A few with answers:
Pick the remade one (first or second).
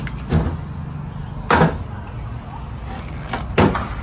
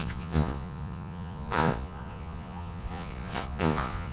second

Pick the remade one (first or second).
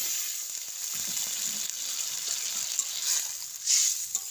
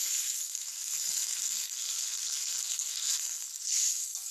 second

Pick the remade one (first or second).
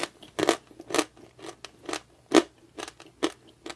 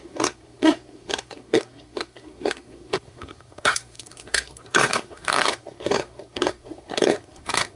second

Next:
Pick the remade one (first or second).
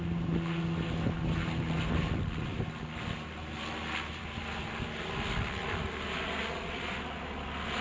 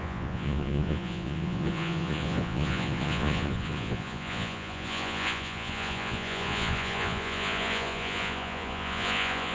second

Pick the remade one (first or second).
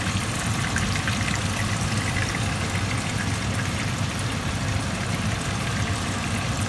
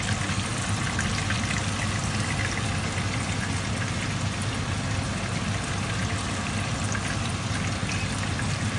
first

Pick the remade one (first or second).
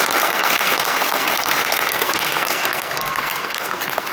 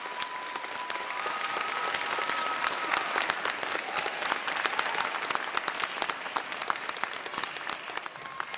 first